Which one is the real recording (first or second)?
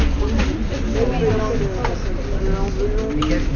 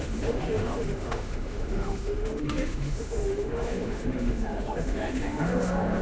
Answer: first